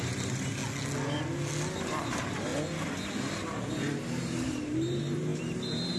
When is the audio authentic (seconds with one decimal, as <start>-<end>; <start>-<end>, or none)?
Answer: 0.6-1.9; 2.5-3.5